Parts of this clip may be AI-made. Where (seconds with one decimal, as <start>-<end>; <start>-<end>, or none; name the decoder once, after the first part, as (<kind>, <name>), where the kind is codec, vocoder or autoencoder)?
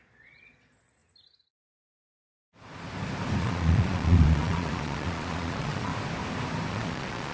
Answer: 0.0-1.0 (vocoder, Vocos); 3.4-5.9; 6.7-7.3